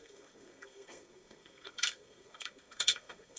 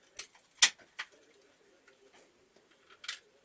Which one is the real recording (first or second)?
second